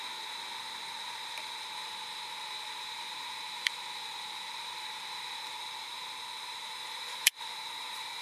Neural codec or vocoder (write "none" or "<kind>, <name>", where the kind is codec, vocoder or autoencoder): vocoder, BigVGAN v2